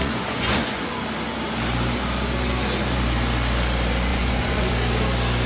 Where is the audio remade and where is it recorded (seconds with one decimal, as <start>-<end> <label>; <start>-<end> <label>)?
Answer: 0.0-0.9 remade; 0.9-4.1 recorded; 4.1-4.7 remade; 4.7-5.5 recorded